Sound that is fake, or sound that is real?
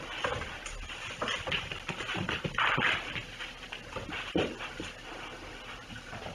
real